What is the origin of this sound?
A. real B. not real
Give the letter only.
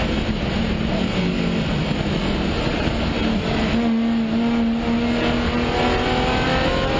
A